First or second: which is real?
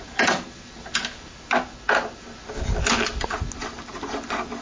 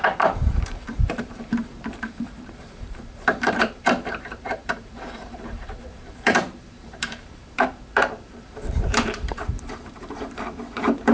first